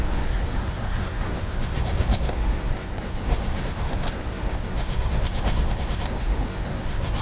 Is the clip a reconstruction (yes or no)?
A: yes